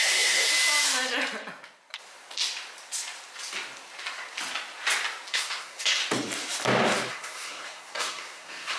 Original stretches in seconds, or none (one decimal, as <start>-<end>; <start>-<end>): 0.5-5.3; 6.0-7.1